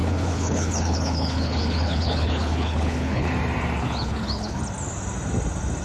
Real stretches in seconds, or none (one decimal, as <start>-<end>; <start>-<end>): 3.3-3.8; 4.6-5.8